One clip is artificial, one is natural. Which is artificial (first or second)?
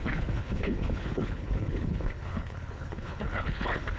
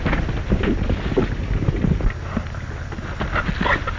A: first